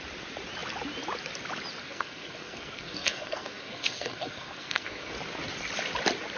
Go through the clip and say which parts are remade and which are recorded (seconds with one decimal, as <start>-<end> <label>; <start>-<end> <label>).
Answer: 0.0-1.8 recorded; 1.8-5.1 remade; 5.1-6.4 recorded